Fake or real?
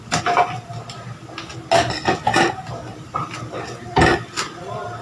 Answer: real